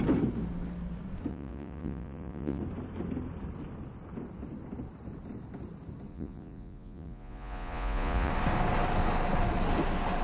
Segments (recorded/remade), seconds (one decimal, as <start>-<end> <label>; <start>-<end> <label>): 0.0-1.3 recorded; 1.3-2.6 remade; 2.6-6.1 recorded; 6.1-8.3 remade; 8.3-10.2 recorded